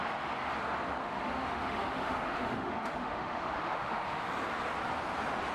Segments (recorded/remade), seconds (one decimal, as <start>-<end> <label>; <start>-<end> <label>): 0.0-1.0 recorded; 1.0-4.3 remade; 4.3-5.5 recorded